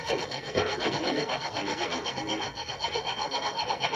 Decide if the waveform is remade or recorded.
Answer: remade